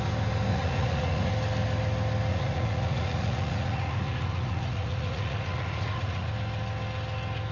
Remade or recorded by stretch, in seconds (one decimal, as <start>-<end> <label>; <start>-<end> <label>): 0.0-0.5 recorded; 0.5-1.3 remade; 1.3-2.3 recorded; 2.3-6.3 remade; 6.3-7.5 recorded